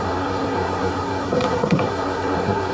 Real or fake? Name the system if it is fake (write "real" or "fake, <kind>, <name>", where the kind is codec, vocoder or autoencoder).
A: fake, codec, SNAC